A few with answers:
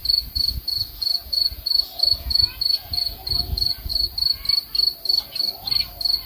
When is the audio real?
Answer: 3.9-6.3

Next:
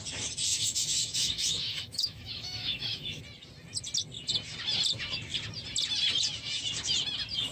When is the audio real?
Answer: 0.0-0.5; 3.2-7.5

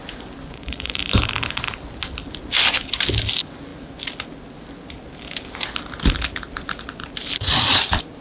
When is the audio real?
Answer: 0.0-0.4; 1.0-8.2

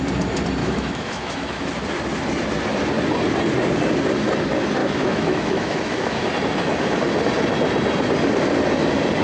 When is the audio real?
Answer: 0.0-0.6; 1.7-4.8; 6.3-9.2

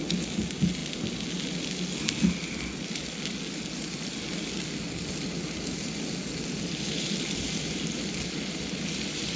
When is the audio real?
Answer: 0.0-9.4

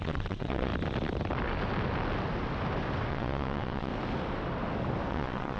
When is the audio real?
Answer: 0.7-3.1; 3.9-5.1

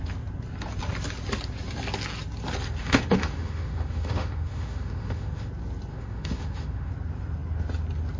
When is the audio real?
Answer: 0.0-2.8; 5.5-5.9; 6.9-8.2